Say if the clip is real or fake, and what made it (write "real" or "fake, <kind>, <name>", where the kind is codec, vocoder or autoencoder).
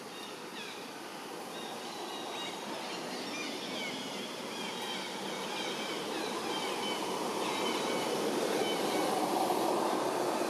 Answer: real